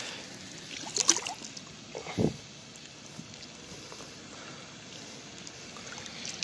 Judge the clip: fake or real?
real